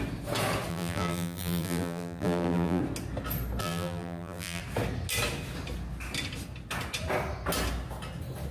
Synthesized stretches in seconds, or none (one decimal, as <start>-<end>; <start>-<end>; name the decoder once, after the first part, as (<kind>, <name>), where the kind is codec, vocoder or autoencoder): 0.7-2.8 (vocoder, BigVGAN v2); 3.6-4.6